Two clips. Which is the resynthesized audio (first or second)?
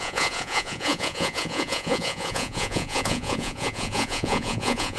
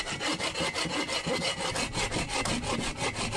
first